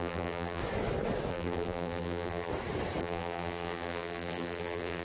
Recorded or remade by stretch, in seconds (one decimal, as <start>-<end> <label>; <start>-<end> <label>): 0.0-0.6 remade; 0.6-1.3 recorded; 1.3-2.5 remade; 2.5-3.0 recorded; 3.0-5.0 remade